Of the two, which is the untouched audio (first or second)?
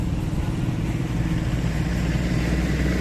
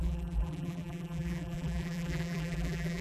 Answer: first